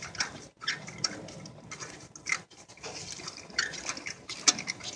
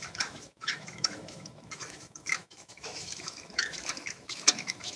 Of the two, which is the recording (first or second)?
first